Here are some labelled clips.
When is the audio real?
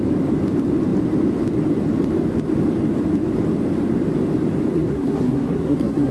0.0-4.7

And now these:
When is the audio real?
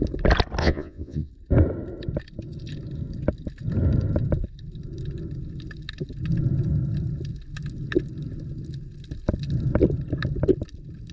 0.0-0.6; 1.3-11.1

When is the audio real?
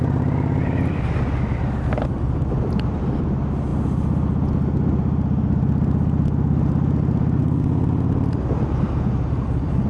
0.0-9.9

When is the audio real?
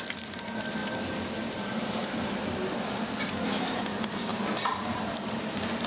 0.0-5.9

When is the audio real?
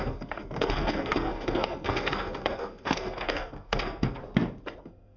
4.2-4.8